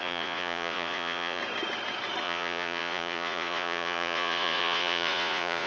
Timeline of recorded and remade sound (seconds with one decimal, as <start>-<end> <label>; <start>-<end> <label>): 0.0-1.4 remade; 1.4-2.2 recorded; 2.2-5.7 remade